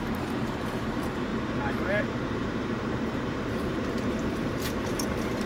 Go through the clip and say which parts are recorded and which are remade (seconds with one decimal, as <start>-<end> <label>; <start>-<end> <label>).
0.0-1.3 remade; 1.3-2.0 recorded; 2.0-5.5 remade